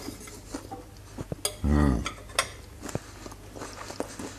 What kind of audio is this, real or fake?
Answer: real